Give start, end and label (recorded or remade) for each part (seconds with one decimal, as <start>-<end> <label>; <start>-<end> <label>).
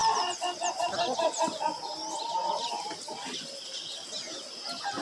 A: 0.0-2.4 recorded; 2.4-3.0 remade; 3.0-5.0 recorded